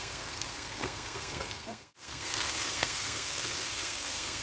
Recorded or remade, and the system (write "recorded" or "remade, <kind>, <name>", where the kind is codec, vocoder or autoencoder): remade, codec, SNAC